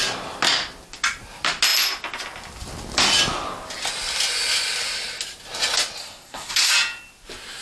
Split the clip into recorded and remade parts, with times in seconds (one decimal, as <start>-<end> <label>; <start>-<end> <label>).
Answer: 0.0-6.0 recorded; 6.0-6.7 remade; 6.7-7.6 recorded